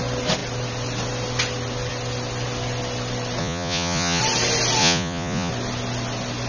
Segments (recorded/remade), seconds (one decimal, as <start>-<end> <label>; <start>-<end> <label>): 0.0-3.4 recorded; 3.4-4.2 remade; 4.2-4.8 recorded; 4.8-5.5 remade; 5.5-6.5 recorded